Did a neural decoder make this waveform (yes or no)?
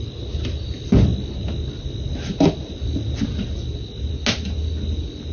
no